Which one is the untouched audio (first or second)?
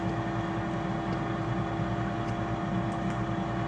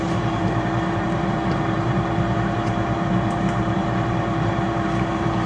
first